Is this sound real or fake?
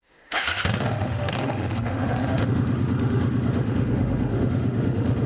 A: fake